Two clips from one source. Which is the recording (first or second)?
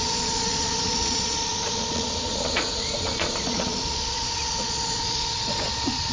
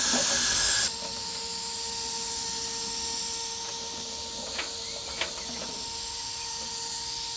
second